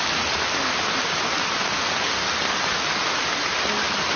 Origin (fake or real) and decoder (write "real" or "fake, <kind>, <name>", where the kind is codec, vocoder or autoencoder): real